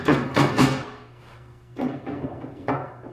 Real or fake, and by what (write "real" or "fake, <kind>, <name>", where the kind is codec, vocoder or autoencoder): fake, codec, SNAC